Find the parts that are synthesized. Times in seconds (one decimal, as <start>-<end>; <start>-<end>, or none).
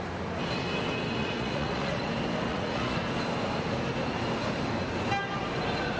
1.2-2.1; 2.5-3.0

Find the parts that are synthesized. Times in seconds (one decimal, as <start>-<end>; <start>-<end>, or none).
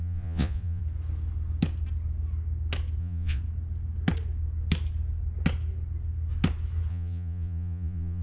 0.0-0.8; 3.0-3.4; 6.9-8.2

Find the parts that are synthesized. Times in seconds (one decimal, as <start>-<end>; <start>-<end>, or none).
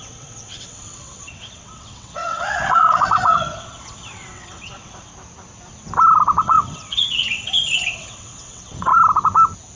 0.0-5.1; 6.4-8.9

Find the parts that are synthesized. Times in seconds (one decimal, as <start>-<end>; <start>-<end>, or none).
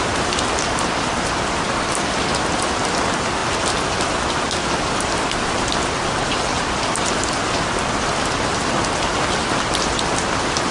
none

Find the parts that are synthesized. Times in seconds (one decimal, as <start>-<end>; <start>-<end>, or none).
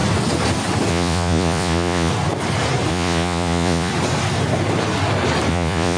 0.9-2.1; 2.9-3.9; 5.5-6.0